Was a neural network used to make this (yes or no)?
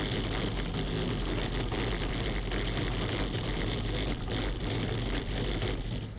no